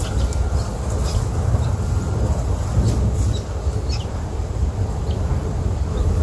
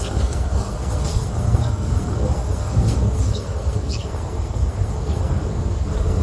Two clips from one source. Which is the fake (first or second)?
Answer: second